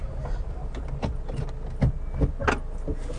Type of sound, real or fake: real